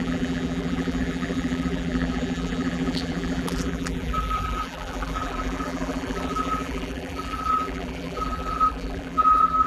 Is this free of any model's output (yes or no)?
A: no